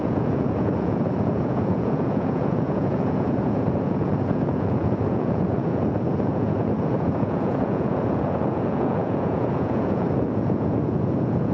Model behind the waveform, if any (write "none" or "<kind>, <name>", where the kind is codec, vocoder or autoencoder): vocoder, Vocos